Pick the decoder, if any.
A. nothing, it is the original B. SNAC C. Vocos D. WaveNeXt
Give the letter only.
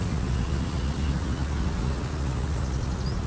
C